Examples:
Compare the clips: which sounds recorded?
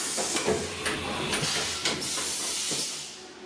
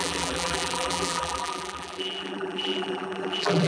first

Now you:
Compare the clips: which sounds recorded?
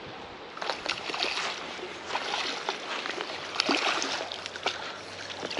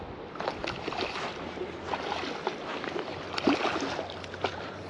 first